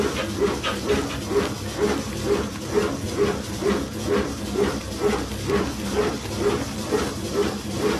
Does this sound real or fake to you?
real